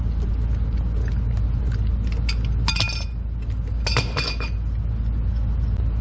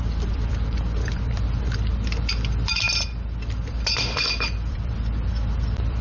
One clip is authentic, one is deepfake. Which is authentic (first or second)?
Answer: first